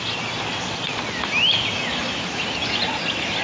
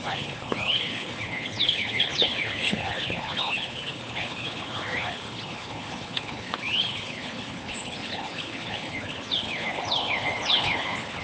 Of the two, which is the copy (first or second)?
second